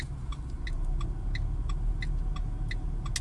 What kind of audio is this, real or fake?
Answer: real